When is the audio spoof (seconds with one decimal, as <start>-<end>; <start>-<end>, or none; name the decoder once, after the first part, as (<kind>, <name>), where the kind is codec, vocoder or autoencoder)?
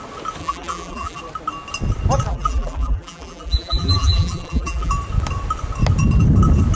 0.4-1.2 (vocoder, BigVGAN v2); 2.3-4.9